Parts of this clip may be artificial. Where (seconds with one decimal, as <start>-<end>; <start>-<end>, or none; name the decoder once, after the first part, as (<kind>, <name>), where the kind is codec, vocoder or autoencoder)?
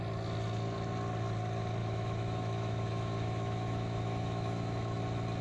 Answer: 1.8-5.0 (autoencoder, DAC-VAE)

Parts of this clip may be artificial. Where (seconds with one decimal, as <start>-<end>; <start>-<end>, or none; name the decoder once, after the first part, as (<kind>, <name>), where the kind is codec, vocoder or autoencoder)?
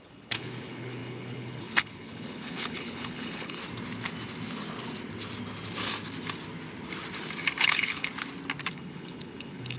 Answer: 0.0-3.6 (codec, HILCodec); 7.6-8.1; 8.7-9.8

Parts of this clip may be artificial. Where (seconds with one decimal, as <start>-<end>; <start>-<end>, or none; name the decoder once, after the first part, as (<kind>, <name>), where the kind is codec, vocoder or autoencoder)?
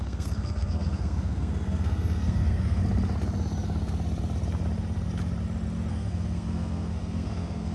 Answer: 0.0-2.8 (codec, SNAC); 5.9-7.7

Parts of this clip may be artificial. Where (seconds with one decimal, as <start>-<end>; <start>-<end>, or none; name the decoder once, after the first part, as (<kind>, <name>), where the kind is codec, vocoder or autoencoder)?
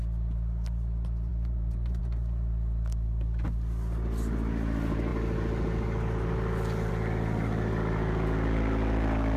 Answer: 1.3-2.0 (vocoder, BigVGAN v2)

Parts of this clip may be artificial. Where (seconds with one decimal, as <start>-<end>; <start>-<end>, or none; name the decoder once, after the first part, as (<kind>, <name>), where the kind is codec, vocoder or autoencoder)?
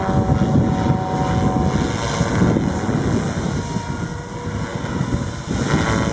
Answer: none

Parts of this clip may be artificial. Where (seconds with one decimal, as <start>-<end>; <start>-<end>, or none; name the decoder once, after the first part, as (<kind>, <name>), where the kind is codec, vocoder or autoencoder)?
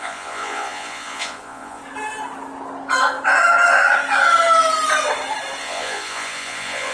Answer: 0.0-1.8 (vocoder, Vocos); 5.6-6.9